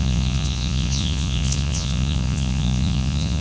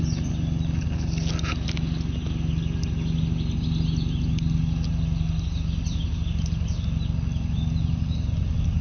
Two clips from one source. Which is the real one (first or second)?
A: second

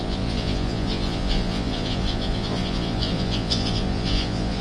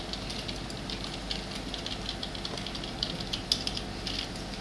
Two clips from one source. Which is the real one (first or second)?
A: second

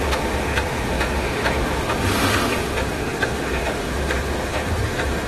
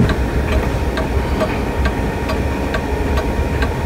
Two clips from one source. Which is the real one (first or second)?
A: second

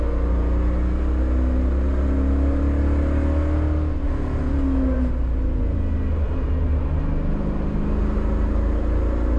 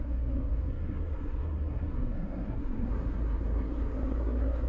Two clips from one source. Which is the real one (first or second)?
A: first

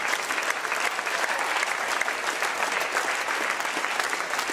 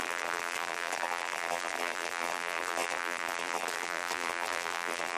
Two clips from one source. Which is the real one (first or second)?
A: first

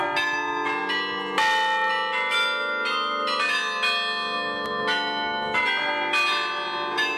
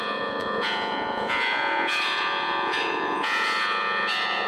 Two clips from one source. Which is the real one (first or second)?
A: first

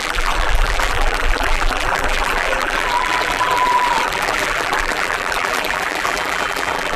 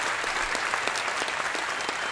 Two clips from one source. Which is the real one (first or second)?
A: second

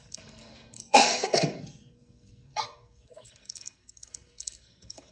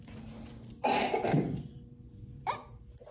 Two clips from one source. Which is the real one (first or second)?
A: second